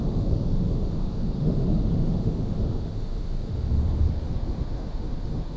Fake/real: fake